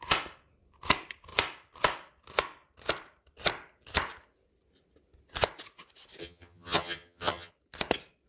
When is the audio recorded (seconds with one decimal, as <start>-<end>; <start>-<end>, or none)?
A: 0.0-6.2; 7.5-8.3